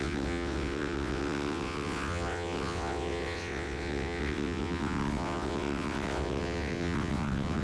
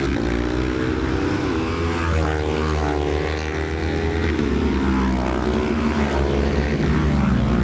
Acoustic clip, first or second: second